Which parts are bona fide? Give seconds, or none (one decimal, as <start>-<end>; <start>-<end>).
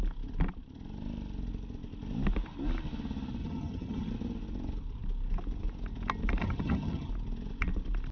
0.0-3.4; 4.1-6.4; 7.1-8.1